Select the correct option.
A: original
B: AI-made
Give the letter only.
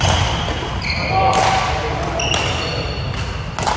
A